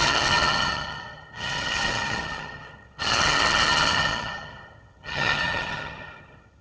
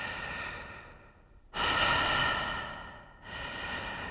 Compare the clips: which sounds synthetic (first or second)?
first